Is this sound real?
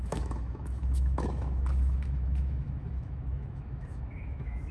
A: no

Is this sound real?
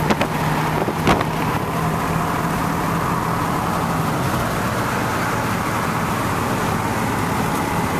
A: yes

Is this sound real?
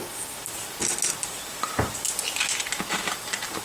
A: yes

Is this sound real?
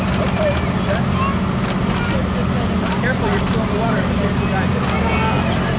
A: yes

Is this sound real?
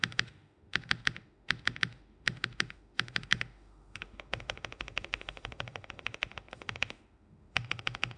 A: no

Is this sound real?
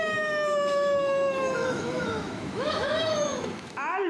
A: no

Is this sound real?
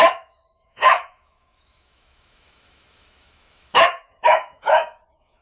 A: no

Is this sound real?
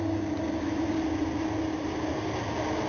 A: yes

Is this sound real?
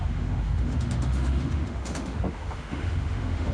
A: no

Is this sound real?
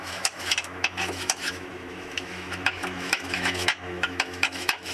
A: no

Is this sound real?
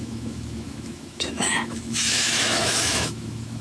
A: no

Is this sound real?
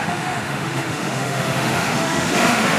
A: no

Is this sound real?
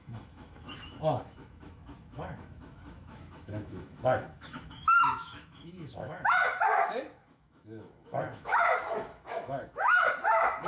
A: no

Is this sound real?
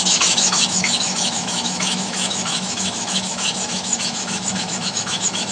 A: no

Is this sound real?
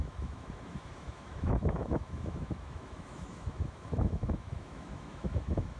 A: no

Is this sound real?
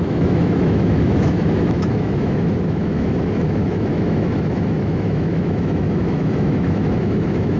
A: no